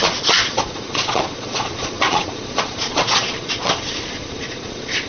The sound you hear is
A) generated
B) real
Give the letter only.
A